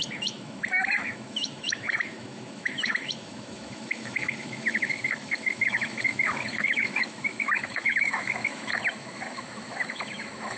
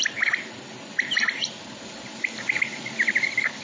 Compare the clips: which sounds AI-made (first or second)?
first